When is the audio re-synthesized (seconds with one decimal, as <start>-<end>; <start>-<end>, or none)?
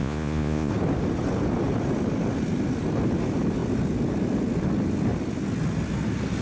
0.0-0.7